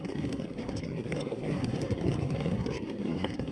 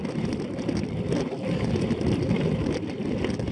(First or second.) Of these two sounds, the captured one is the second